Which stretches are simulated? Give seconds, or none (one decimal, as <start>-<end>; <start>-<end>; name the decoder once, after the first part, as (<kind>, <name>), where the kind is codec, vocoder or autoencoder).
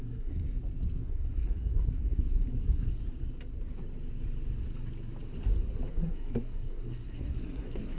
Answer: 0.0-0.4 (codec, SNAC); 1.0-3.0; 5.9-8.0